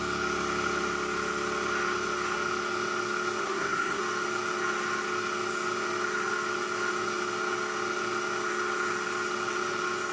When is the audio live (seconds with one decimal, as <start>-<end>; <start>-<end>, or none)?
0.0-3.4; 4.0-10.1